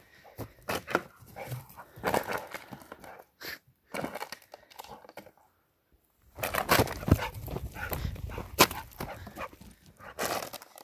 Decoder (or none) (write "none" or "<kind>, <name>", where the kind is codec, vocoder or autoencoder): none